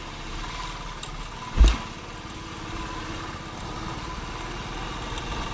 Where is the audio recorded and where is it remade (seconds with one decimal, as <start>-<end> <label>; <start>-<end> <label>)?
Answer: 0.0-5.5 recorded